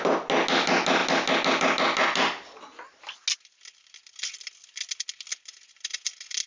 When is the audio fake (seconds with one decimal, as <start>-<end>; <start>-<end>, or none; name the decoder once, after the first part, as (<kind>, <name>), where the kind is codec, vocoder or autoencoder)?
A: none